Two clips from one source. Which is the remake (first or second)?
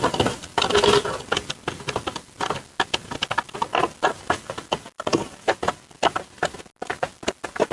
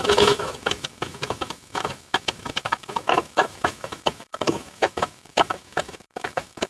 second